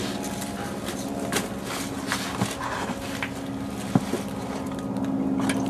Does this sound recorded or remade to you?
recorded